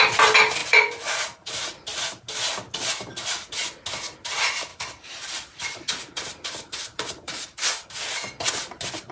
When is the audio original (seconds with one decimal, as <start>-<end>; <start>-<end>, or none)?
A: 0.0-0.6; 1.5-4.7; 7.9-9.1